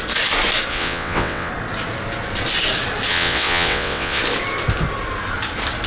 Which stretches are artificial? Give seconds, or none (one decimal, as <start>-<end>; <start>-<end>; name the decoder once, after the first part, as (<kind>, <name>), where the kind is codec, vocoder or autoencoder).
0.7-1.5 (vocoder, WaveNeXt); 3.1-4.2